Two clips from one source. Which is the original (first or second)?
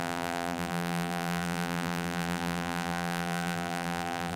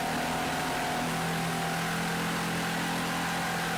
second